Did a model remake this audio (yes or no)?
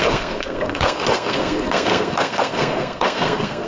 yes